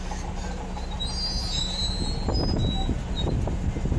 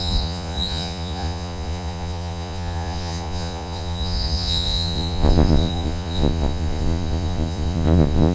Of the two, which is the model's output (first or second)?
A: second